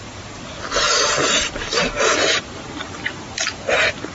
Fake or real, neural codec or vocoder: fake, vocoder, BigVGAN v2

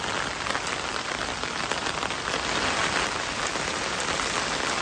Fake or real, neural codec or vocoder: real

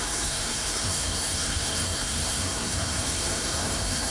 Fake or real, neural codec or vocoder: fake, codec, SNAC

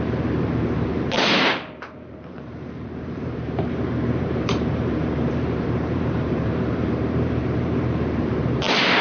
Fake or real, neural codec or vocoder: fake, vocoder, BigVGAN v2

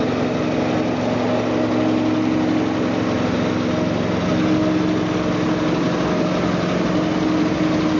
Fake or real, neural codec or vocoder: real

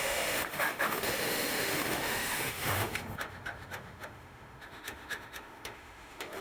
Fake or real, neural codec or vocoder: fake, autoencoder, DAC-VAE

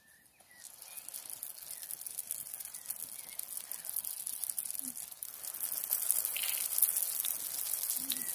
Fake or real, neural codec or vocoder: real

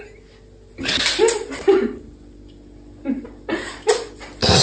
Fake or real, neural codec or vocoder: real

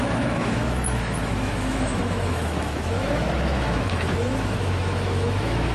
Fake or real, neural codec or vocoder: fake, autoencoder, DAC-VAE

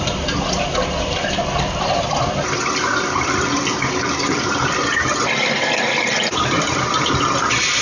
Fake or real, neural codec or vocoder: fake, vocoder, BigVGAN v2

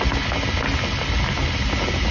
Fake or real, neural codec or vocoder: real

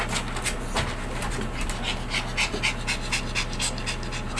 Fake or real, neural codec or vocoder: real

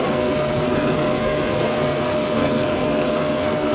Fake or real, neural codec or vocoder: fake, codec, SNAC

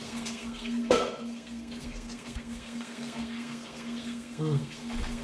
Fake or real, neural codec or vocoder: fake, codec, SNAC